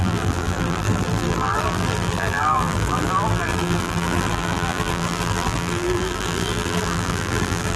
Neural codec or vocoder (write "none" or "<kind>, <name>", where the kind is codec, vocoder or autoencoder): vocoder, BigVGAN v2